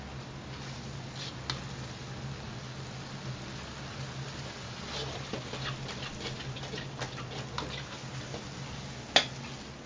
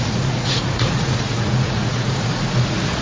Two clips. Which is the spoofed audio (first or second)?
second